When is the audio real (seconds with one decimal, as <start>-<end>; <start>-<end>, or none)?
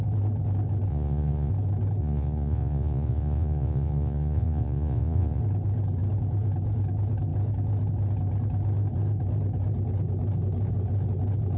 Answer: 0.0-0.9; 1.5-2.0; 5.4-11.6